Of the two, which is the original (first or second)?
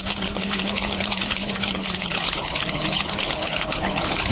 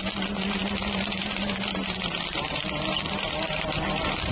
second